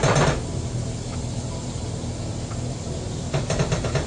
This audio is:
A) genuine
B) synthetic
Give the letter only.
B